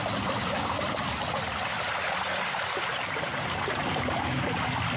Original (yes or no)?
yes